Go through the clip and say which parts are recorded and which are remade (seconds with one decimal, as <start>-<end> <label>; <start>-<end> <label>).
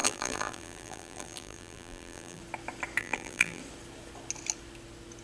0.0-2.4 remade; 2.4-3.0 recorded; 3.0-3.6 remade; 3.6-5.2 recorded